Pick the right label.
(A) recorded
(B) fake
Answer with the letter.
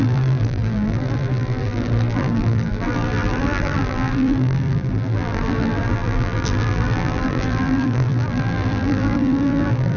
B